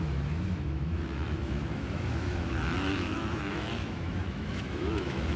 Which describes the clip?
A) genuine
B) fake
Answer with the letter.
B